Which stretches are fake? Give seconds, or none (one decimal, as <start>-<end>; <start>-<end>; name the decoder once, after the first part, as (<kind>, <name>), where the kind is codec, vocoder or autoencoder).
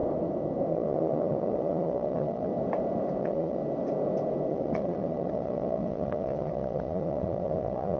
0.7-2.5 (vocoder, Vocos); 3.2-3.6; 4.5-8.0